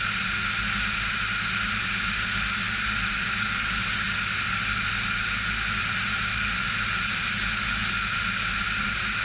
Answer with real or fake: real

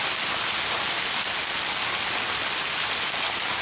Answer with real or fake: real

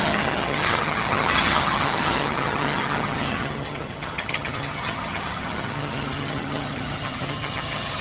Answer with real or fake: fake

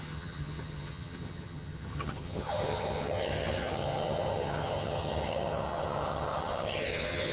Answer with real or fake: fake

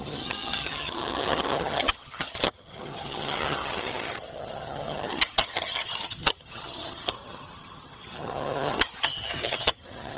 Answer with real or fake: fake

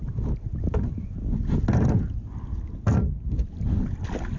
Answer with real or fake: real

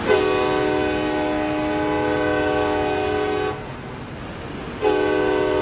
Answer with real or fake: real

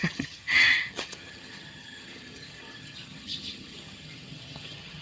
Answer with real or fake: fake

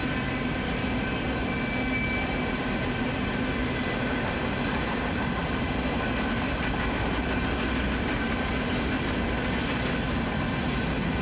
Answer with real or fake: real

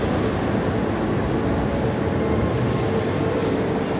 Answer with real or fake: real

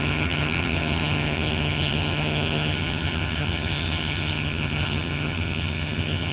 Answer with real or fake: fake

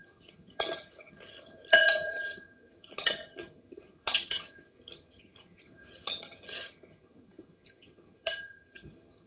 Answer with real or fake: fake